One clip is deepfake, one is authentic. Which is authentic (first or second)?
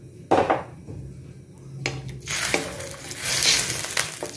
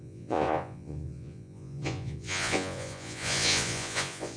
first